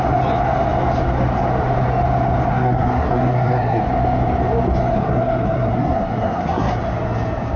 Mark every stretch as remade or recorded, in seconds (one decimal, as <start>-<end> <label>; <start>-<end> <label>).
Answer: 0.0-2.5 recorded; 2.5-3.8 remade; 3.8-4.9 recorded; 4.9-6.8 remade; 6.8-7.6 recorded